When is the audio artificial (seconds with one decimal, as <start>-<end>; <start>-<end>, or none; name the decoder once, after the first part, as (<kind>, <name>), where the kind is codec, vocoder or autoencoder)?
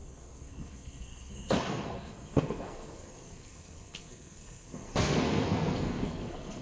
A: 0.0-6.6 (codec, SNAC)